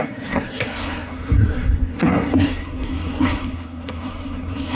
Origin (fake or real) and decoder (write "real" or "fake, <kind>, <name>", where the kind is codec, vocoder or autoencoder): fake, codec, SNAC